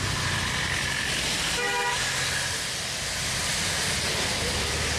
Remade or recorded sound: recorded